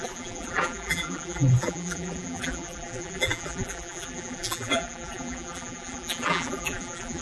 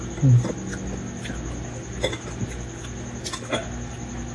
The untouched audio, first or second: second